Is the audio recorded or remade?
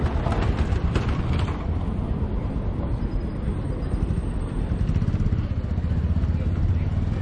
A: recorded